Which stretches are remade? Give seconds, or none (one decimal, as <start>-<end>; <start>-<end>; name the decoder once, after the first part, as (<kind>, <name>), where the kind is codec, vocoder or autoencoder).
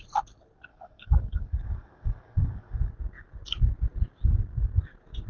0.7-2.9 (codec, DAC)